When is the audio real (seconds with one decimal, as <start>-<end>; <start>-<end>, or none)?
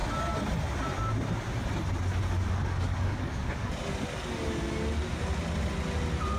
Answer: 0.0-2.2; 3.7-6.4